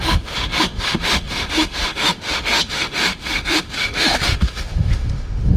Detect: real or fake fake